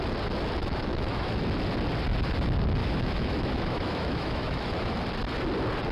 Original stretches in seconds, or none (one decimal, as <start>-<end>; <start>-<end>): 0.0-0.6; 1.4-2.8; 5.0-5.9